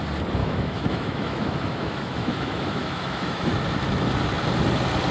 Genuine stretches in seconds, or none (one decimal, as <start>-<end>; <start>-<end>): 0.0-0.4; 3.5-5.1